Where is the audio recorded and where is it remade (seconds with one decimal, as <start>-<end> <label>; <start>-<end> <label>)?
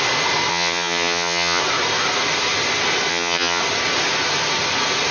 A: 0.0-0.5 recorded; 0.5-1.6 remade; 1.6-3.1 recorded; 3.1-3.6 remade; 3.6-5.1 recorded